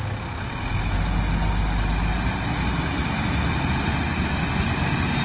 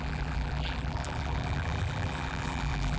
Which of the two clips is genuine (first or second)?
first